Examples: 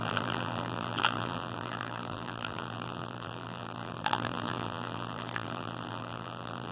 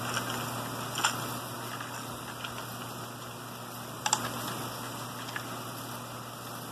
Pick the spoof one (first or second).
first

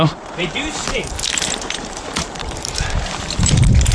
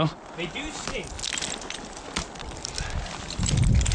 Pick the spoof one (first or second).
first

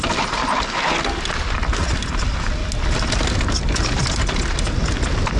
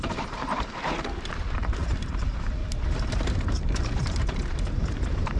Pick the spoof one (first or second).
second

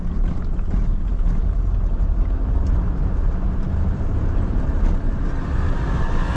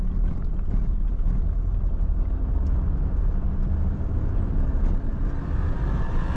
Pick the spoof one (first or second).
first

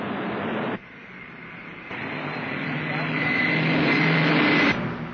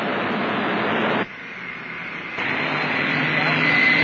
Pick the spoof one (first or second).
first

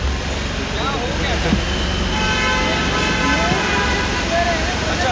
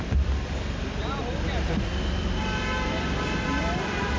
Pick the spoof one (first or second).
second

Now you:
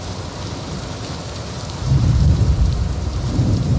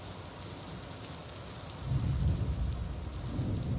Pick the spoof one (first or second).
first